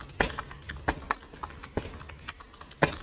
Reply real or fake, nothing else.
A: real